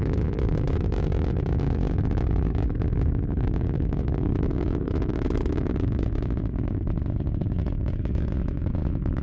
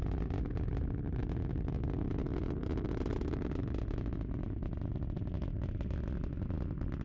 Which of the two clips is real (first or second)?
second